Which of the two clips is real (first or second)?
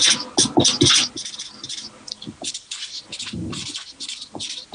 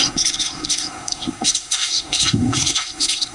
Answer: first